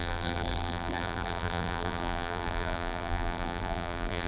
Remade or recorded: remade